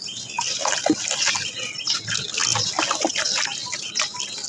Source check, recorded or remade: recorded